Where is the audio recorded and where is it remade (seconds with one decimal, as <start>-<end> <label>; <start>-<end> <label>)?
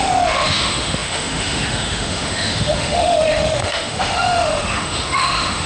0.0-5.7 remade